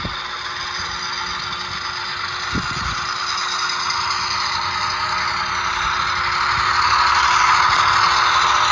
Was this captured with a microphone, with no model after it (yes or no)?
yes